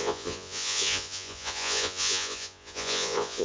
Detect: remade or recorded remade